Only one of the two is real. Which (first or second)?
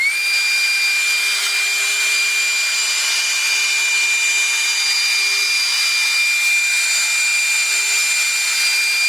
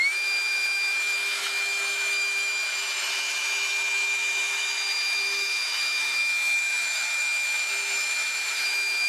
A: first